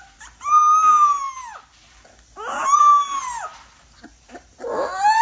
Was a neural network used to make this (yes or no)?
no